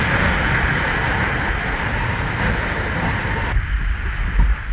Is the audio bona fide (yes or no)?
yes